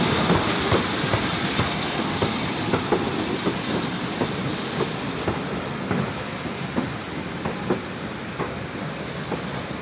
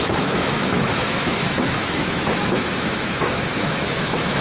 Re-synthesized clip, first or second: second